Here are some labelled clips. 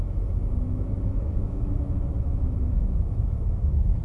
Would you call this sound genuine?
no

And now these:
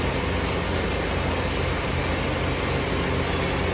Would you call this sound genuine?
yes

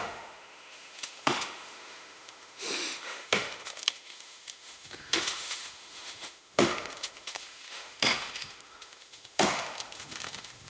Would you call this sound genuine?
no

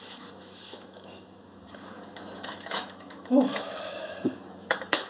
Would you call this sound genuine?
no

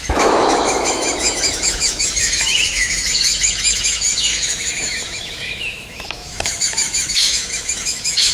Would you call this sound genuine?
no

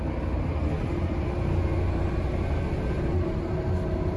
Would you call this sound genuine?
yes